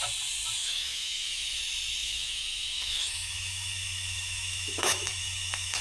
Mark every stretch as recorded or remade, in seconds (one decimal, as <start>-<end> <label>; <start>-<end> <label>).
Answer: 0.0-0.6 recorded; 0.6-1.6 remade; 1.6-2.0 recorded; 2.0-5.8 remade